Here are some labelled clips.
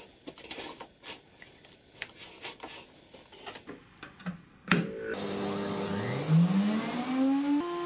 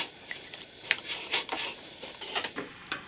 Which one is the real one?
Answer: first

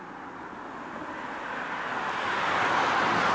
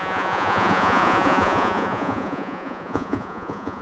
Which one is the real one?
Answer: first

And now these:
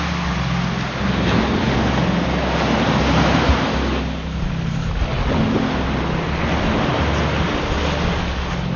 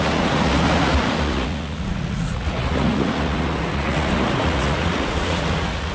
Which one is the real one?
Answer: first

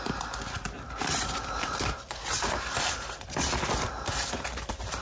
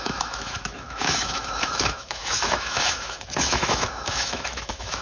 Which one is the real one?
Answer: first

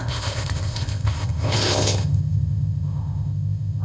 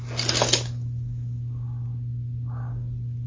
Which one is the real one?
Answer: second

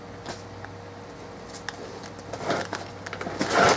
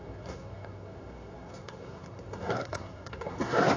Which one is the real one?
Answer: first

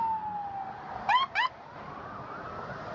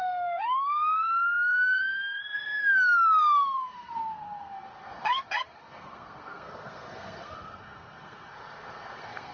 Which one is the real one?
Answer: first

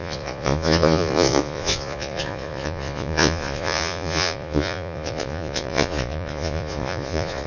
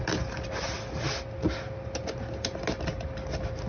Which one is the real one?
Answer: second